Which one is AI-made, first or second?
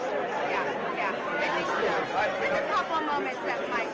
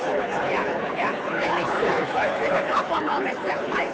second